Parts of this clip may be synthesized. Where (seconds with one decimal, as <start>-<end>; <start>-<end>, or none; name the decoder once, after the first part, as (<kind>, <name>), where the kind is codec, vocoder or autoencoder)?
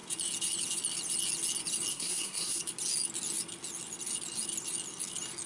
1.9-2.6 (codec, SNAC)